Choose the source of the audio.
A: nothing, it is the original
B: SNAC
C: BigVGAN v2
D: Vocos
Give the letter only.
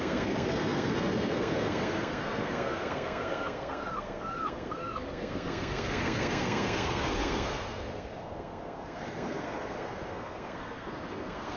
B